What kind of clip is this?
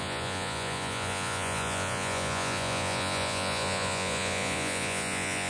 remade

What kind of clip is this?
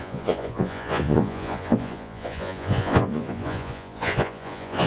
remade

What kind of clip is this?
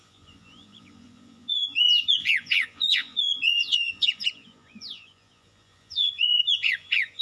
remade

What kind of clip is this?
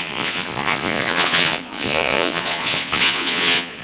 remade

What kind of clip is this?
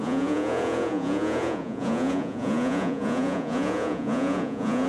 remade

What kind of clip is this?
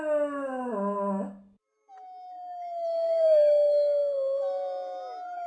recorded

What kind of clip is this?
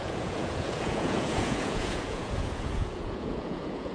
remade